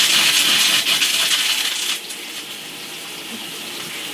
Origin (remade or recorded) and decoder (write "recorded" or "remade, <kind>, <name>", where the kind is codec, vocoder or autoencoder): recorded